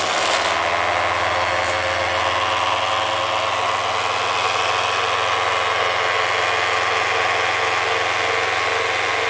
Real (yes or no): yes